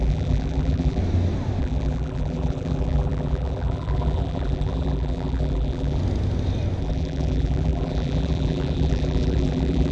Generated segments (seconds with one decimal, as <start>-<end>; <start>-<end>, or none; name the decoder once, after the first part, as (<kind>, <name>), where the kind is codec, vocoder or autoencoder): 0.0-1.0 (vocoder, BigVGAN v2); 1.6-6.0; 6.8-9.9